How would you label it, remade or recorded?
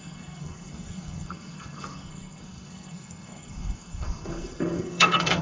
remade